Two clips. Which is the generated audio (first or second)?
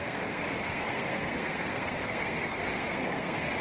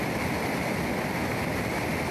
first